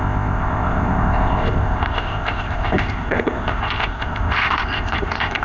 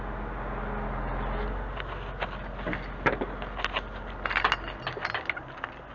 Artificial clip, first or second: first